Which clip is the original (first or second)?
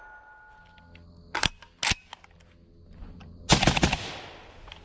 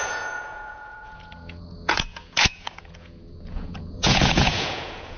first